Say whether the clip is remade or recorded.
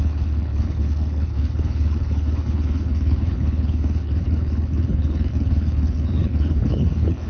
remade